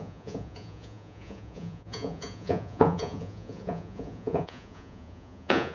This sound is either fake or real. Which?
fake